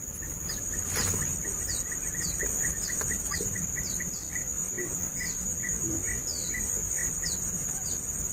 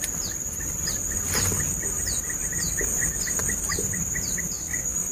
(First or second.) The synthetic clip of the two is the second